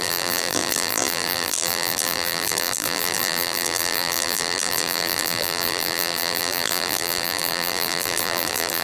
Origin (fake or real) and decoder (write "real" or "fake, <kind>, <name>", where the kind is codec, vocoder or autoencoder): fake, vocoder, BigVGAN v2